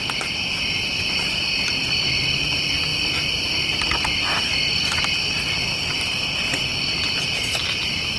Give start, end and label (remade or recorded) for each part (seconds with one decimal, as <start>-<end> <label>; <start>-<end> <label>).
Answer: 0.0-8.2 recorded